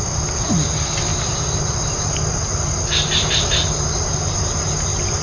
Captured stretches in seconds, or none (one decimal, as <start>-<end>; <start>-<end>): 0.0-5.2

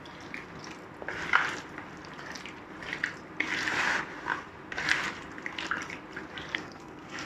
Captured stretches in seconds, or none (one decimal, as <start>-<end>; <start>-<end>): 0.0-6.5